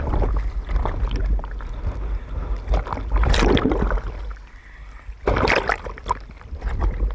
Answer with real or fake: real